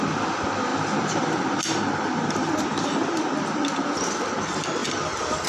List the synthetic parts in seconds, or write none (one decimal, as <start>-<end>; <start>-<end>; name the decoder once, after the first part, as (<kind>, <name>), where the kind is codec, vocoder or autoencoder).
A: 0.7-4.0 (vocoder, BigVGAN v2); 4.8-5.5